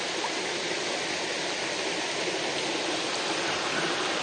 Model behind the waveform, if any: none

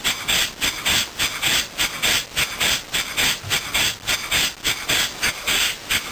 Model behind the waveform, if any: none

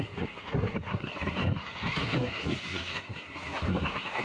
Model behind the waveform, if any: codec, SNAC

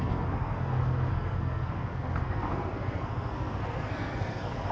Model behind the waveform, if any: codec, SNAC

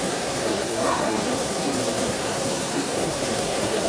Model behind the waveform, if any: codec, SNAC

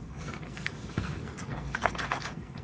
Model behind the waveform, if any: codec, SNAC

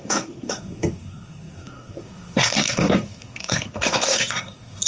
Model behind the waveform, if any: codec, SNAC